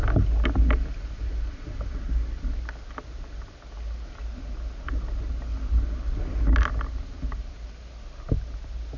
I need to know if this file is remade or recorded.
recorded